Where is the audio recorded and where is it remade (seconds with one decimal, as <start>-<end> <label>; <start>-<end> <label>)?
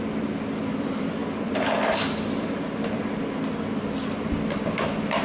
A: 0.0-5.2 recorded